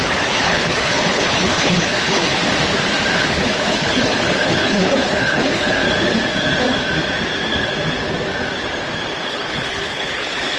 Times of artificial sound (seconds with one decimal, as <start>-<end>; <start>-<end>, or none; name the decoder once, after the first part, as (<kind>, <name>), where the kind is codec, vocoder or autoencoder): 0.0-2.4 (codec, HILCodec); 3.1-5.8; 9.3-10.6